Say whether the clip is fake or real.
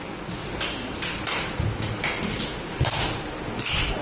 real